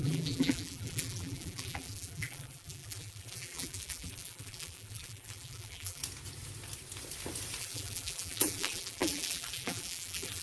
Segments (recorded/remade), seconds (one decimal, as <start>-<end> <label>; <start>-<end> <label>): 0.0-6.0 remade; 6.0-7.6 recorded; 7.6-10.4 remade